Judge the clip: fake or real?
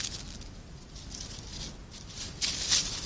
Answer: real